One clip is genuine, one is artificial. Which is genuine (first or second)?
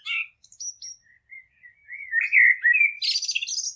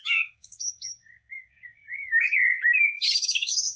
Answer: first